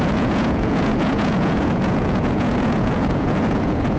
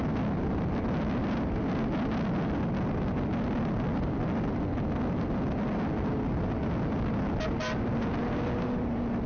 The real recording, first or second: second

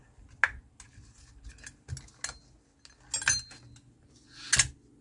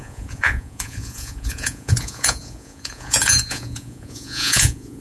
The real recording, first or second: first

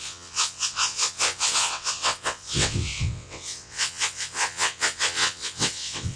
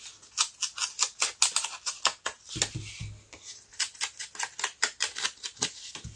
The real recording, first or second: second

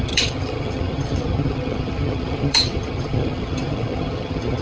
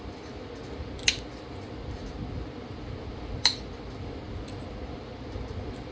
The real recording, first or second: second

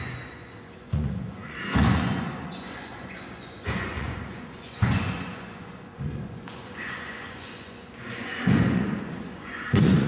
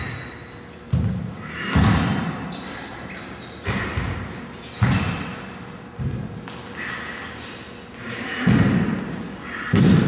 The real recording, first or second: second